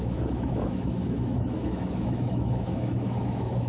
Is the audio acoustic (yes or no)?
no